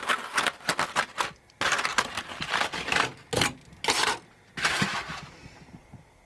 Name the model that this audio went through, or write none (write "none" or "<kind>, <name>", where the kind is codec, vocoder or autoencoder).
none